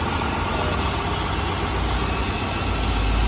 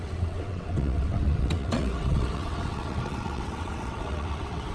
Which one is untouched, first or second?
first